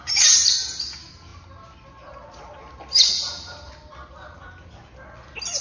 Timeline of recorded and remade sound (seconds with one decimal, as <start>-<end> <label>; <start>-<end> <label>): 0.0-5.6 recorded